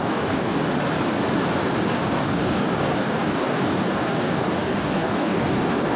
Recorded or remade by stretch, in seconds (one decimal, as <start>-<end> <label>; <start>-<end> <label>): 0.0-0.7 remade; 0.7-1.9 recorded; 1.9-6.0 remade